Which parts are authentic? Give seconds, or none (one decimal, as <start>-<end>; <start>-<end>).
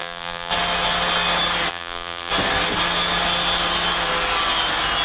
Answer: 0.5-1.7; 2.3-5.0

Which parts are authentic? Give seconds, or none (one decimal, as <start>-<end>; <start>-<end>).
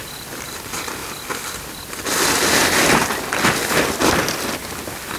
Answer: 0.0-5.2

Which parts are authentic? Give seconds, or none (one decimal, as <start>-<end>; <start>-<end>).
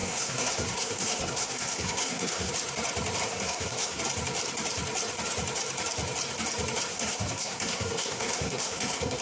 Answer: 2.5-3.2; 4.0-6.9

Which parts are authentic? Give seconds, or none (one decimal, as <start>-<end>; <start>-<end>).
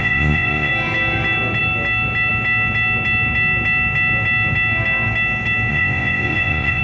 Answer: 0.7-5.7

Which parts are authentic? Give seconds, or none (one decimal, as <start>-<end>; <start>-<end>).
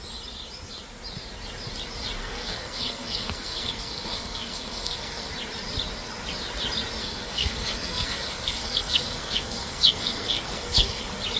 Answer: 0.0-2.2; 5.3-7.0; 11.0-11.4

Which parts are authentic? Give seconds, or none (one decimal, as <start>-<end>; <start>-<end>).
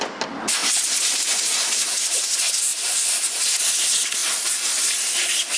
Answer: 0.0-5.6